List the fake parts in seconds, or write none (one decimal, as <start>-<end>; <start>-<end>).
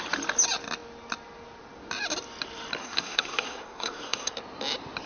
2.8-4.3